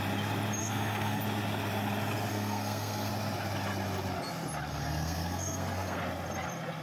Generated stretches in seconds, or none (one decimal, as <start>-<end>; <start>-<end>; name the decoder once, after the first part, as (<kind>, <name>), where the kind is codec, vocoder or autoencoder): 0.6-1.2 (codec, SNAC); 2.3-3.1; 4.7-6.0

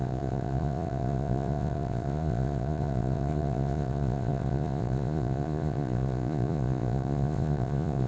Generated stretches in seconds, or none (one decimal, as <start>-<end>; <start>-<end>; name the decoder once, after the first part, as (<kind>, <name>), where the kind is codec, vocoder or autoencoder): 0.0-8.1 (vocoder, Vocos)

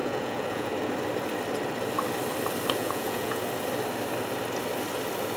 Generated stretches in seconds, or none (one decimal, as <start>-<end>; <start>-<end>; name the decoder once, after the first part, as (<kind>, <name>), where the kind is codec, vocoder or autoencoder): 0.0-0.7 (vocoder, Vocos); 2.8-3.4

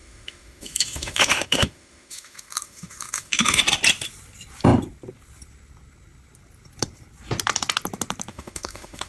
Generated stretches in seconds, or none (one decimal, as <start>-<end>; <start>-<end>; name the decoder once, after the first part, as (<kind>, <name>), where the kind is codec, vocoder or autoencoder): 0.0-3.6 (autoencoder, DAC-VAE); 8.3-9.1